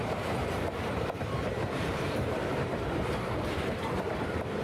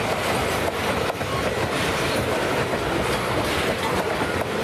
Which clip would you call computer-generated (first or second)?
first